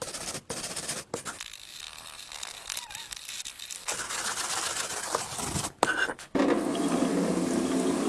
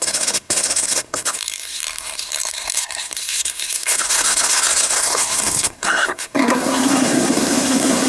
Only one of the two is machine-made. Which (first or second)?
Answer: second